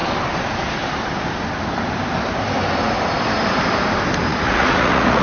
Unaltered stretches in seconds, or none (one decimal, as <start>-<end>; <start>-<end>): 0.0-4.3